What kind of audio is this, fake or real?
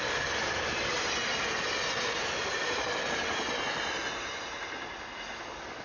real